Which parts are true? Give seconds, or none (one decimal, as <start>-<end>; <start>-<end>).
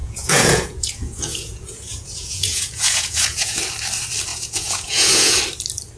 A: 3.6-4.3; 5.4-6.0